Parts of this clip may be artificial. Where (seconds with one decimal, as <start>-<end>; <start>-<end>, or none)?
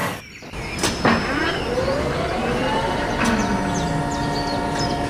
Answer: none